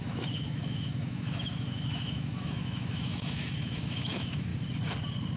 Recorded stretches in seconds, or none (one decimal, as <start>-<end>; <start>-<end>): 4.5-5.4